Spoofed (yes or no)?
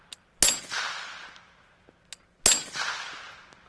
no